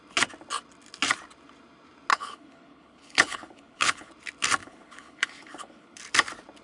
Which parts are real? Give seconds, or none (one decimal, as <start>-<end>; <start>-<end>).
0.0-2.1; 4.1-4.6; 6.0-6.6

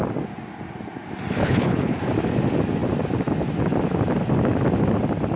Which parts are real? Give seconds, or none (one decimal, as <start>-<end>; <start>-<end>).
0.0-1.4; 2.0-5.4

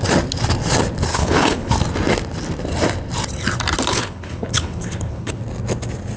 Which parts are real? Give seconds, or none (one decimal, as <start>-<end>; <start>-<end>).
0.0-1.1; 1.7-3.9; 5.4-6.2

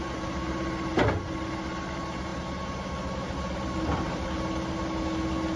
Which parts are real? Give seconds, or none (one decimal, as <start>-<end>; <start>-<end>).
0.0-5.6

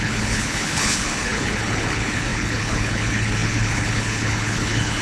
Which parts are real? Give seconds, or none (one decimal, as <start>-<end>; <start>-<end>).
none

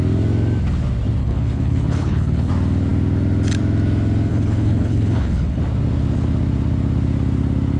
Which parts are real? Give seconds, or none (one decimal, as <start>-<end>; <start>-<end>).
0.0-1.2; 2.5-4.3; 5.6-7.8